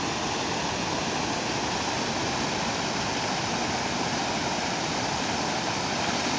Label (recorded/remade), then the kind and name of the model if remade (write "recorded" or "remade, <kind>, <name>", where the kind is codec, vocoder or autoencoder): recorded